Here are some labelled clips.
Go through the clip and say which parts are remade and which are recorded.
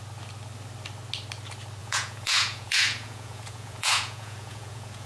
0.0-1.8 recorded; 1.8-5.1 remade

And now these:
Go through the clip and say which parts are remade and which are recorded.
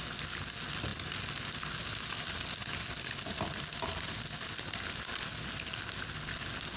0.0-6.8 recorded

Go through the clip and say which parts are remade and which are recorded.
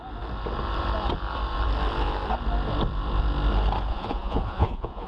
0.0-3.9 recorded; 3.9-5.1 remade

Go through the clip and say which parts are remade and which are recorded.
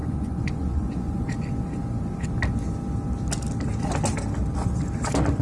0.0-1.3 remade; 1.3-5.4 recorded